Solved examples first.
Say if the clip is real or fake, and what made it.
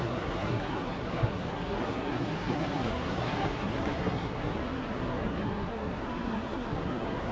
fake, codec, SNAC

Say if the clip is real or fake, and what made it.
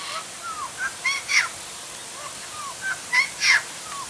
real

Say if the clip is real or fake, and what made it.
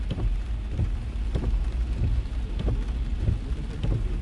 real